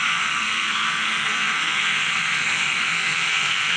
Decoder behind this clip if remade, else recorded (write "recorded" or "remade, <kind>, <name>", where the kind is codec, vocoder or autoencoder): remade, codec, SNAC